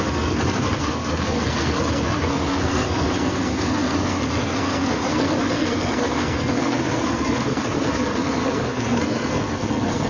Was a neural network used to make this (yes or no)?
yes